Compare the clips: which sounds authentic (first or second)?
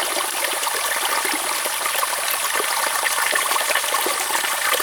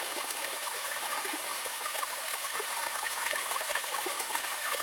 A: first